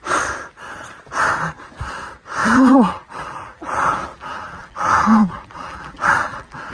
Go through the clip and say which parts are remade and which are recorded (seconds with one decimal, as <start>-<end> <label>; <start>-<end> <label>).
0.0-2.4 recorded; 2.4-6.7 remade